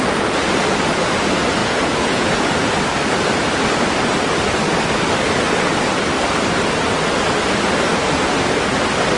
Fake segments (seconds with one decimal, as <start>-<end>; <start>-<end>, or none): 1.6-2.7